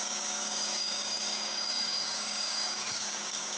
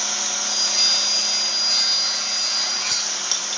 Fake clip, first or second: first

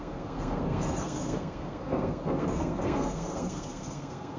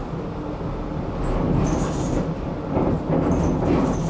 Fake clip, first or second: first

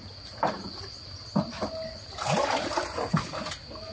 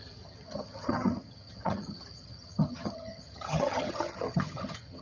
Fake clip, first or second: second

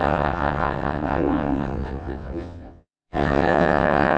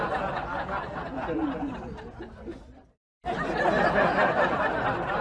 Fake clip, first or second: first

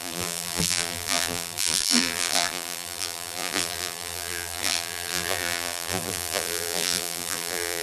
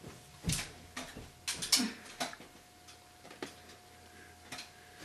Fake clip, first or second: first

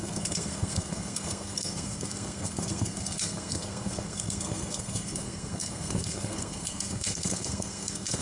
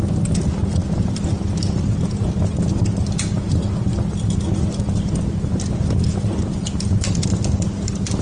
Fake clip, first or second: first